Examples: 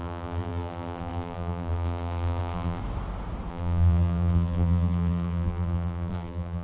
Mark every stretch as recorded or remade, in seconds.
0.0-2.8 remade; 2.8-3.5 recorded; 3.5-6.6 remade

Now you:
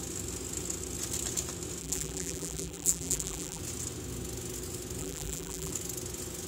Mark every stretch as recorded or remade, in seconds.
0.0-1.8 recorded; 1.8-3.6 remade; 3.6-5.0 recorded; 5.0-5.7 remade; 5.7-6.5 recorded

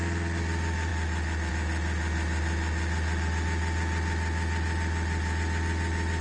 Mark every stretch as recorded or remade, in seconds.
0.0-6.2 recorded

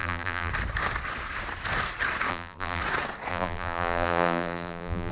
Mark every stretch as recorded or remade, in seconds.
0.0-0.5 remade; 0.5-2.3 recorded; 2.3-2.8 remade; 2.8-3.3 recorded; 3.3-5.1 remade

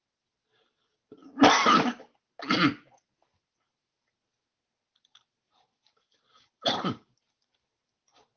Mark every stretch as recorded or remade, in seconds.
0.0-1.2 recorded; 1.2-2.4 remade; 2.4-3.9 recorded; 3.9-8.0 remade; 8.0-8.4 recorded